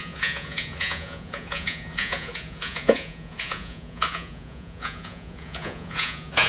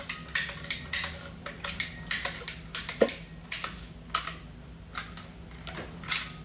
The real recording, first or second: second